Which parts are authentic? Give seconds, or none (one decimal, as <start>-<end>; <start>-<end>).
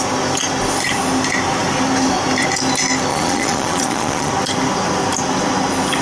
0.0-3.1; 4.3-6.0